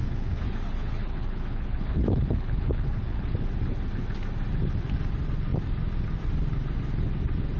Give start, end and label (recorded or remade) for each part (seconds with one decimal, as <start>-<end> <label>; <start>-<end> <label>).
0.0-3.3 remade; 3.3-7.6 recorded